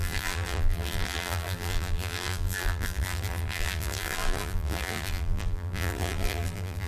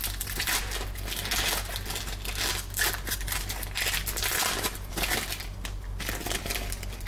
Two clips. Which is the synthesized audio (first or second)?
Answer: first